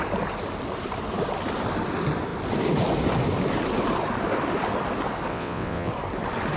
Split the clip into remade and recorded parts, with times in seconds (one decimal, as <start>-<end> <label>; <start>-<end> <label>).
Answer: 0.0-5.3 recorded; 5.3-5.9 remade; 5.9-6.6 recorded